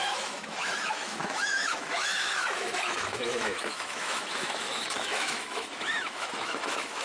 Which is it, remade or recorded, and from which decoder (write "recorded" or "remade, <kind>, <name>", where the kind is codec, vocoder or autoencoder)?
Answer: remade, autoencoder, DAC-VAE